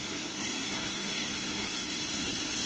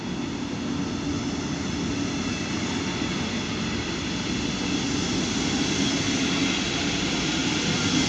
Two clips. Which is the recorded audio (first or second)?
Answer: second